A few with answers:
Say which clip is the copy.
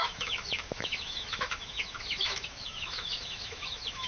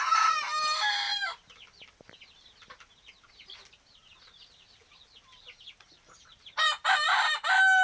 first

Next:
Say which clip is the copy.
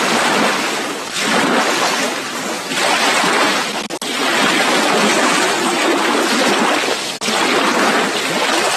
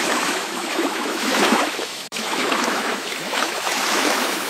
second